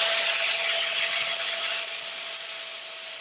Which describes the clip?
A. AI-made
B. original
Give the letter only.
B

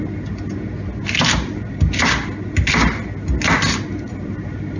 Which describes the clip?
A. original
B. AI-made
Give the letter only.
A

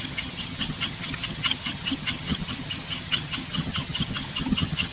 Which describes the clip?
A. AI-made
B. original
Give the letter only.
A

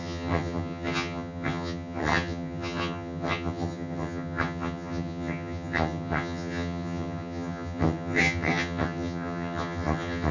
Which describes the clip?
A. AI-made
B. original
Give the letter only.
A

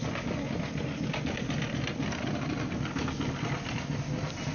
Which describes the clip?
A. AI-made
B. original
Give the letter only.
B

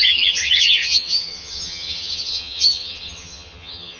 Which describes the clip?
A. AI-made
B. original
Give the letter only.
A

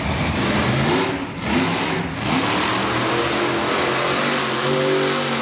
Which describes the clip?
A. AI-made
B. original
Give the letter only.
B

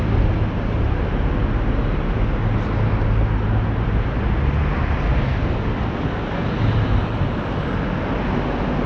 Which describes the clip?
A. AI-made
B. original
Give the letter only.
B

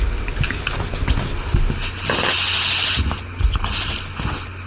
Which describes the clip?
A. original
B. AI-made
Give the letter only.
A